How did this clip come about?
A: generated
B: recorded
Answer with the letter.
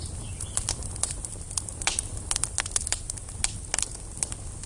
B